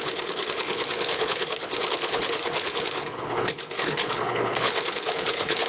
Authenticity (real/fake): fake